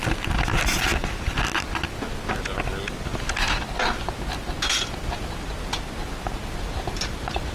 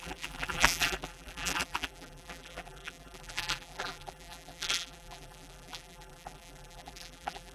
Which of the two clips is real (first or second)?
first